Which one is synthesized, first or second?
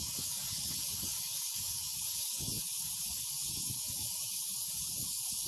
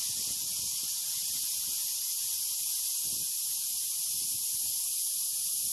first